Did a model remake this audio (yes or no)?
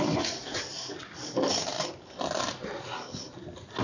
no